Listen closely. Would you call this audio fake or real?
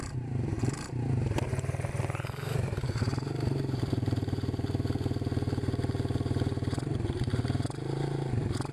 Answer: fake